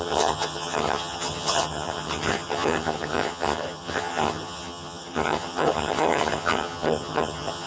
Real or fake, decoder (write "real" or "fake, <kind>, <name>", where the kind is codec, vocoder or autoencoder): fake, vocoder, HiFi-GAN